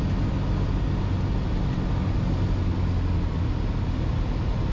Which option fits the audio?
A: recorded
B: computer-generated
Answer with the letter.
A